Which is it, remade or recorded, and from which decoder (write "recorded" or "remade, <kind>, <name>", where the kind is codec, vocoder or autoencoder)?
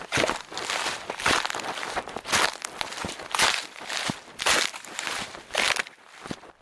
recorded